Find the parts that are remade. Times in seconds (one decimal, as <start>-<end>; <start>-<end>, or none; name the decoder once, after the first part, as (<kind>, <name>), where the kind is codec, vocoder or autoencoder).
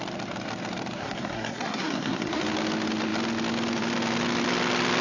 1.0-2.4 (codec, SNAC)